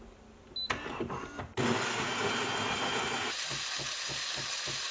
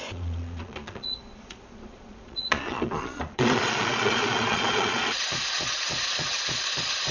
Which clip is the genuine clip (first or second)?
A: first